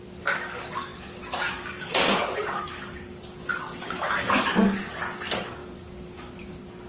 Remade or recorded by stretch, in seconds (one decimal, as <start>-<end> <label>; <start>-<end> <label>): 0.0-6.9 remade